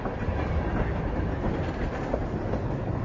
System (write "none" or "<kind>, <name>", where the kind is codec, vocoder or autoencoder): none